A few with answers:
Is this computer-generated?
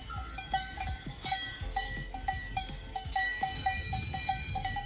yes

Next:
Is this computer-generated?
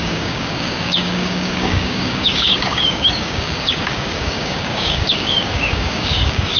yes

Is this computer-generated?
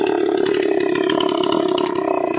no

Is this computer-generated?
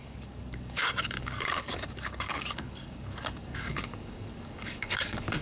yes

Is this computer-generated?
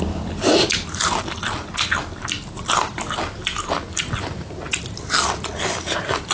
no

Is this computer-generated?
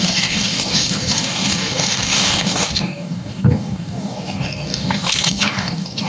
yes